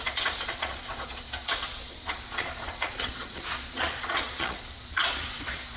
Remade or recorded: remade